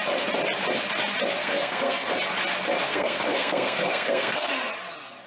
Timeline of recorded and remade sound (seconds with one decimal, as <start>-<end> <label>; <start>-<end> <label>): 0.0-1.4 recorded; 1.4-2.1 remade; 2.1-2.8 recorded; 2.8-4.5 remade; 4.5-5.3 recorded